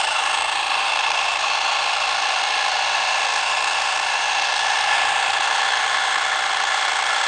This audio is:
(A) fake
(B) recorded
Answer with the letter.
A